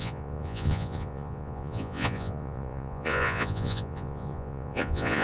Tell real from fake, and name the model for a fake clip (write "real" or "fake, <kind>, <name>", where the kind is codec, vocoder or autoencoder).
fake, vocoder, Vocos